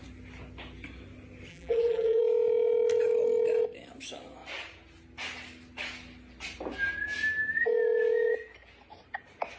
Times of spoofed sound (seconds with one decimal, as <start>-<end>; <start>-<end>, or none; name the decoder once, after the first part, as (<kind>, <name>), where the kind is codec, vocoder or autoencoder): 1.5-2.2 (vocoder, BigVGAN v2)